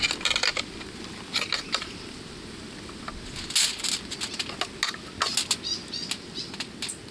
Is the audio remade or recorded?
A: recorded